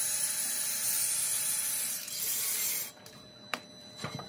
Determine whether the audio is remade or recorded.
remade